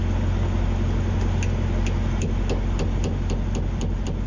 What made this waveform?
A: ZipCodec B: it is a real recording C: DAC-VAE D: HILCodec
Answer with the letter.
B